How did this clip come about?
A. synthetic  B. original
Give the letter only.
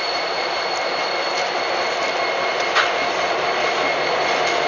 B